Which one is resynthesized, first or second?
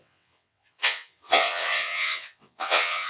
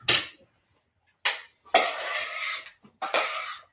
first